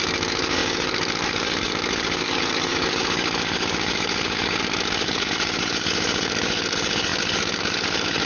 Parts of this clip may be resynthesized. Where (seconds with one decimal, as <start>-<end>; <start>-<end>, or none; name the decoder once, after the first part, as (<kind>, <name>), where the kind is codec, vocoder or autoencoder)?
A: 0.0-8.3 (codec, DAC)